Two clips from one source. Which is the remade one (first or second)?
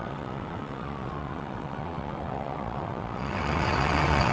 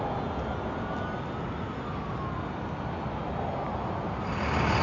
first